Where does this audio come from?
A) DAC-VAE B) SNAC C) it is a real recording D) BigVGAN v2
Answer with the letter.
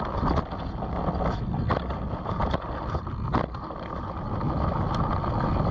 C